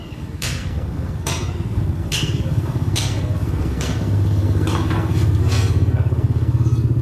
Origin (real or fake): fake